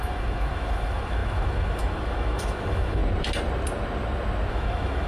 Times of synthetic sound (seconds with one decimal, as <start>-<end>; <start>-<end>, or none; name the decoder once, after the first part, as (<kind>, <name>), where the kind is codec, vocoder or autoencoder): 0.0-3.0 (autoencoder, DAC-VAE); 4.5-5.1